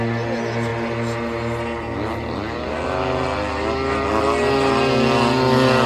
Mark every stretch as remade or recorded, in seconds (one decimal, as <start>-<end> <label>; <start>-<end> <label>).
0.0-5.9 recorded